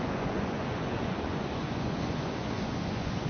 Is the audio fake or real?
fake